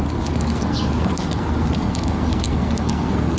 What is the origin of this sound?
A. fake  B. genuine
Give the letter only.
A